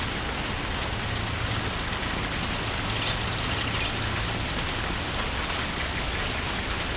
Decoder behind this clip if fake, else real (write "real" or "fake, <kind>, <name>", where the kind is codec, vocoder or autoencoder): real